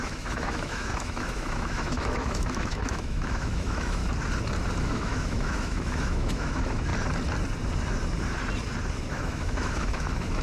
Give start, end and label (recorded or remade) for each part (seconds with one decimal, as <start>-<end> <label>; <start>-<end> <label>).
0.0-4.0 remade; 4.0-4.8 recorded; 4.8-6.9 remade; 6.9-9.1 recorded; 9.1-10.4 remade

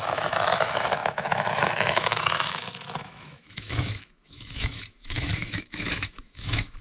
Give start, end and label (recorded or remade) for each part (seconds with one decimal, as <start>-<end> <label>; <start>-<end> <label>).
0.0-6.8 remade

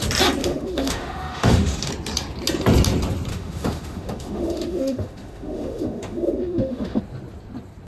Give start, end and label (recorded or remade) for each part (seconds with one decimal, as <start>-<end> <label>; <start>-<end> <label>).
0.0-0.4 recorded; 0.4-1.9 remade; 1.9-3.3 recorded; 3.3-7.0 remade; 7.0-7.9 recorded

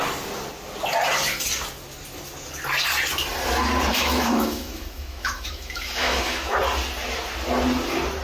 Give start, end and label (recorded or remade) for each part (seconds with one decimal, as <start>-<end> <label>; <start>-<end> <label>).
0.0-3.9 recorded; 3.9-6.6 remade; 6.6-8.2 recorded

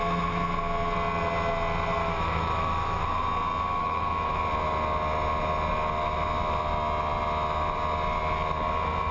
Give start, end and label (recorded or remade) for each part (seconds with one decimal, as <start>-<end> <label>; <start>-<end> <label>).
0.0-2.0 recorded; 2.0-3.1 remade; 3.1-3.8 recorded; 3.8-4.3 remade; 4.3-9.1 recorded